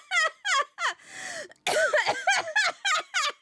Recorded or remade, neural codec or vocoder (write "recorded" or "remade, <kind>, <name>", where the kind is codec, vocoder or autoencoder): recorded